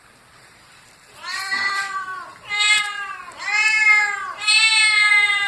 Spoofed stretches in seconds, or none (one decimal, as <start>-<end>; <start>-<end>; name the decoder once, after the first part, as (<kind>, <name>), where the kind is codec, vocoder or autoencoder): 0.0-2.1 (vocoder, BigVGAN v2); 5.1-5.5